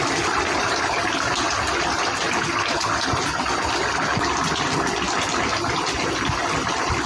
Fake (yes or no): no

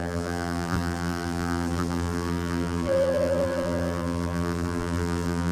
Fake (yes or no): yes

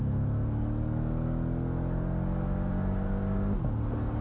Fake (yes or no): no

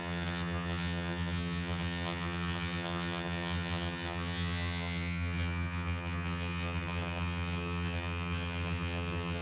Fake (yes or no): yes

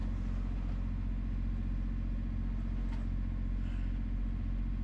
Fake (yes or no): no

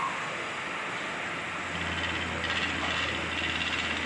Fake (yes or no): no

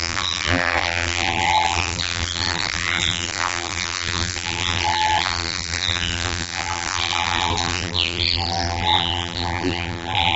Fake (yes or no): yes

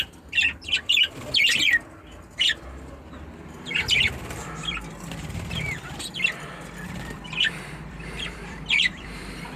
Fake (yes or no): yes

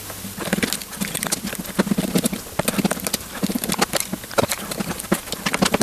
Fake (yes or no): no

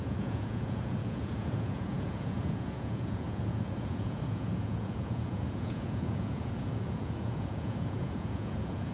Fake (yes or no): yes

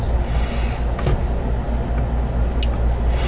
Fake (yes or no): no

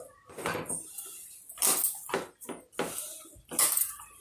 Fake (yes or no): no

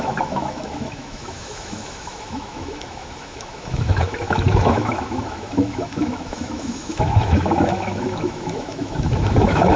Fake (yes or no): yes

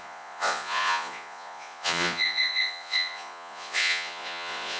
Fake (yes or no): yes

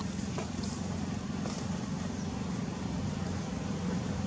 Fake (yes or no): no